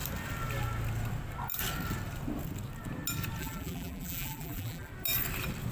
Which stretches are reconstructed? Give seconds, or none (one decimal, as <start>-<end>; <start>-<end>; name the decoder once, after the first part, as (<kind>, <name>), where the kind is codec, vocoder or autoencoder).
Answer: 3.4-4.9 (vocoder, BigVGAN v2)